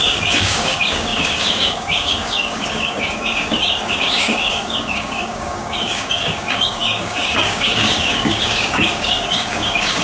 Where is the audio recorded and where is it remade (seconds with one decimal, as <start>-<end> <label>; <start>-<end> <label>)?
0.0-10.0 remade